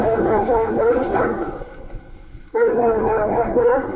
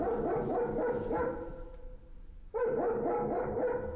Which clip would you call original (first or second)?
second